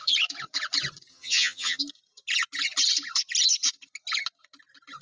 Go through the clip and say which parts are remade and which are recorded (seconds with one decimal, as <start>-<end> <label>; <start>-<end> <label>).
0.0-1.1 recorded; 1.1-1.8 remade; 1.8-5.0 recorded